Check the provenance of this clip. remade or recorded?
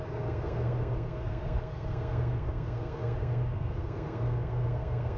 remade